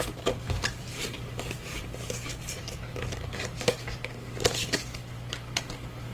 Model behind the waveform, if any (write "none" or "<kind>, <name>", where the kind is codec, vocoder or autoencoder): codec, DAC